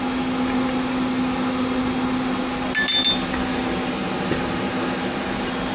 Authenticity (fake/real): real